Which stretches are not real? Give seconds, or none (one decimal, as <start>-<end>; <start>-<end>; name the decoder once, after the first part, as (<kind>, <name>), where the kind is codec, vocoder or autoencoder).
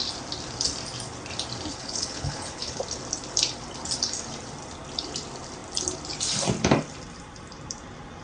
1.7-2.8 (codec, HILCodec)